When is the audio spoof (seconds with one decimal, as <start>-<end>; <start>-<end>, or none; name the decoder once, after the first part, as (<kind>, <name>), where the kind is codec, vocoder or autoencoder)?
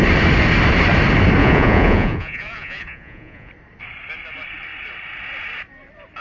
1.4-3.5 (vocoder, Vocos)